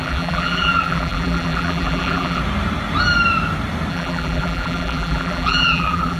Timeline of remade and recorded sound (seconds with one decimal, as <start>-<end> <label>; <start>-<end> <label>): 0.0-2.4 remade; 2.4-3.9 recorded; 3.9-6.2 remade

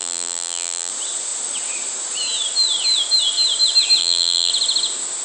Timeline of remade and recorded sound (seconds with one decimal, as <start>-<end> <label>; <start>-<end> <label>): 0.0-0.9 remade; 0.9-4.0 recorded; 4.0-4.5 remade; 4.5-5.2 recorded

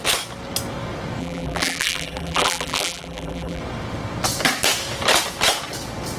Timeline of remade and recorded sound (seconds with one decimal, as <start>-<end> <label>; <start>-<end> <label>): 0.0-1.2 recorded; 1.2-3.6 remade; 3.6-6.2 recorded

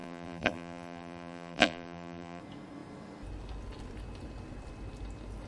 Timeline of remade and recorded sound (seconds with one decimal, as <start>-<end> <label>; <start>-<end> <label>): 0.0-2.4 remade; 2.4-5.5 recorded

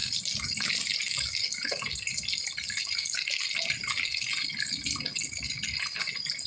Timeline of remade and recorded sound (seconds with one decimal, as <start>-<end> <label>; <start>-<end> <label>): 0.0-6.5 recorded

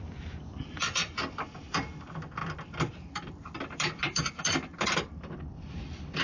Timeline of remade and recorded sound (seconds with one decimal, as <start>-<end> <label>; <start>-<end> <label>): 0.0-6.2 remade

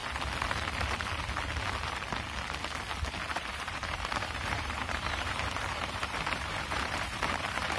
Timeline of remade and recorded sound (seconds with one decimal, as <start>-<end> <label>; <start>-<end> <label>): 0.0-3.3 recorded; 3.3-7.8 remade

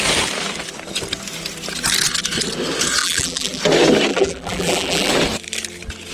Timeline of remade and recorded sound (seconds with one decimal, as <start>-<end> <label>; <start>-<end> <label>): 0.0-3.0 recorded; 3.0-3.6 remade; 3.6-4.1 recorded; 4.1-5.1 remade; 5.1-6.1 recorded